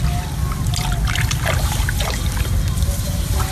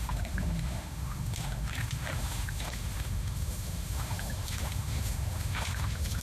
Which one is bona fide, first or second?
first